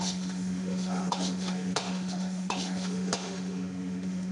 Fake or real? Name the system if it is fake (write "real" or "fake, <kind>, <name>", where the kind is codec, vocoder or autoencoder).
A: fake, autoencoder, DAC-VAE